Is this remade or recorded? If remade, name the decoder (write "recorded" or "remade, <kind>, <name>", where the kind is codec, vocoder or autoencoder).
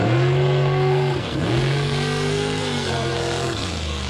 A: remade, codec, SNAC